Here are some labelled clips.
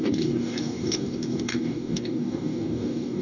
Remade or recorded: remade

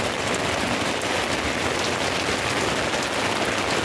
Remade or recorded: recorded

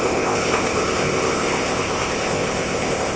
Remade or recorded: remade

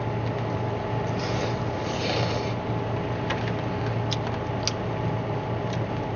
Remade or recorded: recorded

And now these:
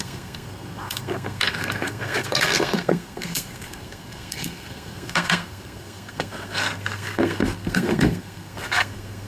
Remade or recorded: remade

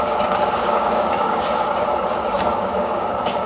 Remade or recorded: remade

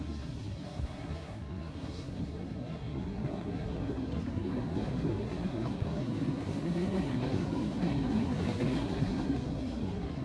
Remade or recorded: remade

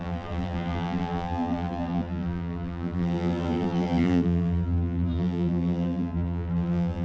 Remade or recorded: remade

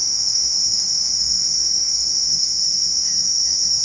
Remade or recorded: remade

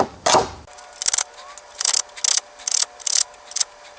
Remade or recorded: recorded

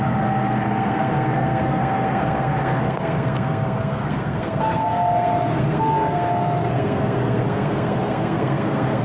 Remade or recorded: remade